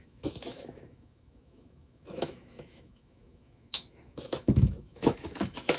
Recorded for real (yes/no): no